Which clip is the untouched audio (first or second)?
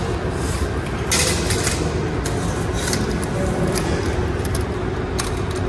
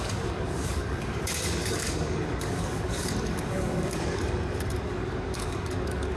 first